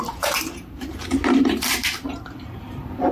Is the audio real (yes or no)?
no